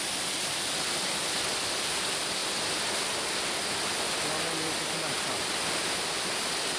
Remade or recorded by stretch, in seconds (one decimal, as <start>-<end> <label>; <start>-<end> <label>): 0.0-6.8 recorded